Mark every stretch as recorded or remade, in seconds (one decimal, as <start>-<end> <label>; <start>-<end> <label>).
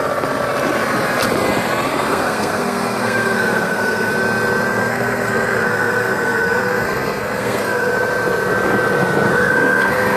0.0-1.9 recorded; 1.9-4.1 remade; 4.1-4.8 recorded; 4.8-7.9 remade; 7.9-9.3 recorded; 9.3-10.2 remade